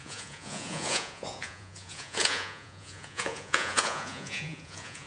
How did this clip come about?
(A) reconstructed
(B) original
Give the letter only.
A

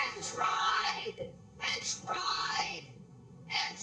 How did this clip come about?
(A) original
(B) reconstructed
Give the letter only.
B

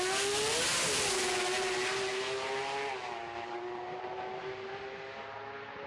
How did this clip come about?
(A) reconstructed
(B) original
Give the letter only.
B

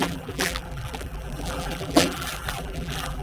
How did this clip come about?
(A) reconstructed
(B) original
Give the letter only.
A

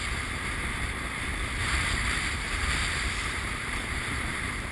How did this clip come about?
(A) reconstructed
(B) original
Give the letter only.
A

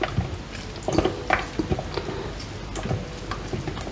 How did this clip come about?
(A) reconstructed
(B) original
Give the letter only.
B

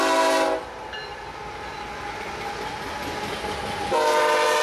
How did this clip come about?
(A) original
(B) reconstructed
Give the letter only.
A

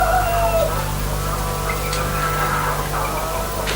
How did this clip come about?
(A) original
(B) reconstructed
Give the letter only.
B